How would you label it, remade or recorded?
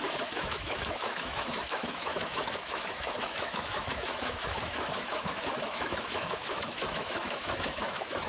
remade